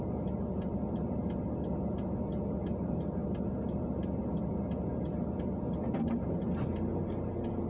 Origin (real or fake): real